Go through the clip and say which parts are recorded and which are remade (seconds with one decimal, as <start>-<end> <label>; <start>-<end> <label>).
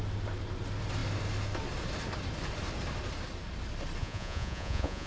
0.0-4.0 recorded; 4.0-5.1 remade